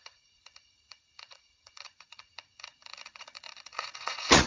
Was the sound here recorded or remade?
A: remade